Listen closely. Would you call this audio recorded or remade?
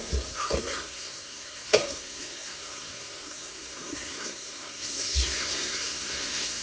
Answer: remade